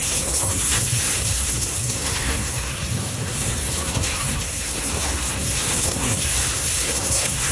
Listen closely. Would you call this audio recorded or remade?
remade